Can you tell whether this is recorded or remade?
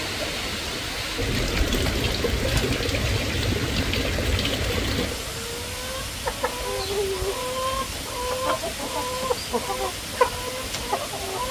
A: recorded